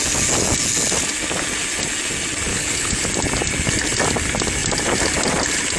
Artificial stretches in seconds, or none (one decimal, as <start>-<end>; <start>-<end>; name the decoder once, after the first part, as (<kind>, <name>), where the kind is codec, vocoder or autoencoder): 2.5-3.1 (codec, HILCodec)